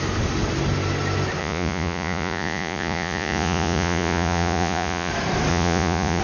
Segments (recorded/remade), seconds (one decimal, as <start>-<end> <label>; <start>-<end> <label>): 0.0-1.4 recorded; 1.4-5.1 remade; 5.1-5.5 recorded; 5.5-6.2 remade